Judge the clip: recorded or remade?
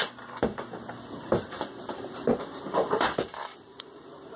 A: remade